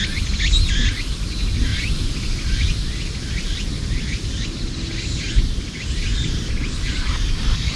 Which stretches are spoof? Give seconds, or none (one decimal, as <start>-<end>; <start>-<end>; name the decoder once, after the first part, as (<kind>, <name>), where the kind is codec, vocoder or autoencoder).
1.7-3.9 (vocoder, BigVGAN v2); 6.1-6.8